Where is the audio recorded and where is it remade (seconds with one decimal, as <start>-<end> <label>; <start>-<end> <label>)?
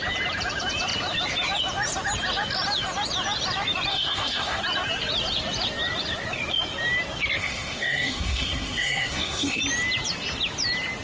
0.0-3.9 recorded; 3.9-4.6 remade; 4.6-7.4 recorded; 7.4-9.6 remade; 9.6-11.0 recorded